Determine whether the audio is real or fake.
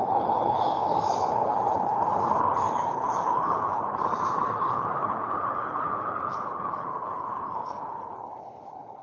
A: fake